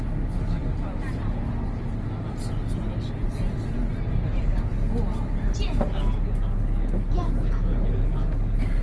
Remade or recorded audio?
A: recorded